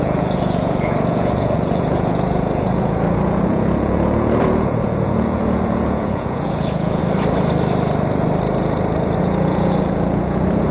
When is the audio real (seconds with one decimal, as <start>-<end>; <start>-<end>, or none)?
7.0-9.2